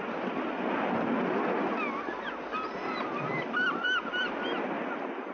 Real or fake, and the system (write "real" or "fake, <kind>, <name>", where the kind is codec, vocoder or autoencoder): real